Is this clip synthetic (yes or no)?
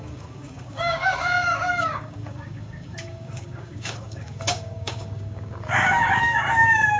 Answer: yes